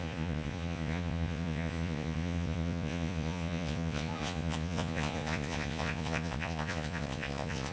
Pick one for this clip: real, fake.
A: fake